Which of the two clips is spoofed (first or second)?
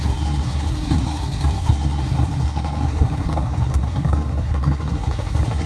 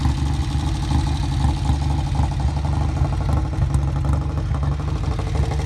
first